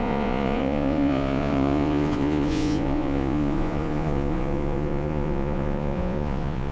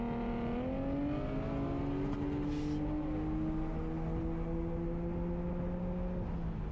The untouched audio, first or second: second